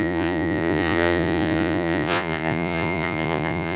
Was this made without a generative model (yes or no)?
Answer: no